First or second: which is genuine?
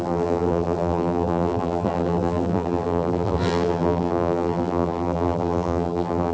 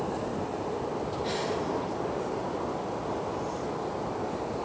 second